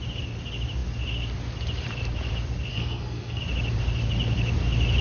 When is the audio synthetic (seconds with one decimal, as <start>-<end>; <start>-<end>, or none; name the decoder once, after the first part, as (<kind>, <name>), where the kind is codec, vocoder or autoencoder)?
2.7-3.4 (codec, SNAC)